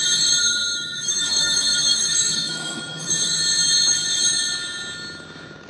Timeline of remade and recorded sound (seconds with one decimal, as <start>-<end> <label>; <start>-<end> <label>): 0.0-0.4 recorded; 0.4-3.1 remade; 3.1-5.7 recorded